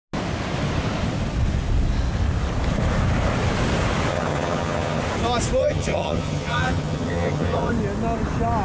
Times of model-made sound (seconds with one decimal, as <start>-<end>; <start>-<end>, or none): 4.1-5.0; 5.6-7.7

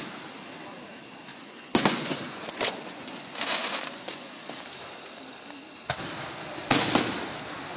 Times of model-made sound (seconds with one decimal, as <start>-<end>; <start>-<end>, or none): 1.3-4.3

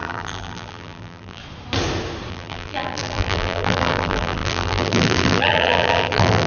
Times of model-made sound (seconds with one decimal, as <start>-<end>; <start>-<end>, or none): 0.0-1.4; 2.3-6.5

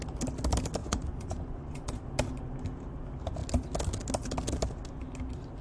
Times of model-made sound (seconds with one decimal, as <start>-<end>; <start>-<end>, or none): 0.8-2.0

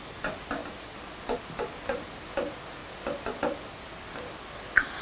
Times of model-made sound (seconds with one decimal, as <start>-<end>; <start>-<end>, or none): none

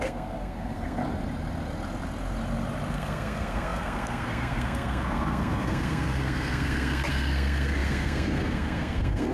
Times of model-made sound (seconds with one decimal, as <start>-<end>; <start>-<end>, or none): 0.0-1.0; 2.9-9.3